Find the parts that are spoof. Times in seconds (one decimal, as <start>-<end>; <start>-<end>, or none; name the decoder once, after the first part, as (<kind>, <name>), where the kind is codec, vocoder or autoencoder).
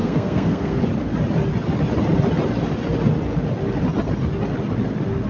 0.0-0.8 (codec, SNAC)